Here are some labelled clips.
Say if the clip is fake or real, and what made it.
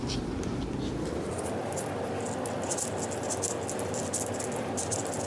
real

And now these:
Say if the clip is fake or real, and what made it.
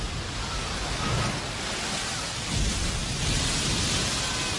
real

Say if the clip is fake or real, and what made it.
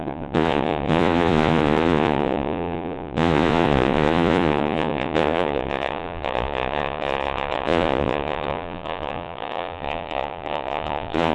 fake, vocoder, Vocos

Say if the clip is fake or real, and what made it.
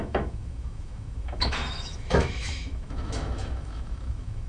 fake, autoencoder, DAC-VAE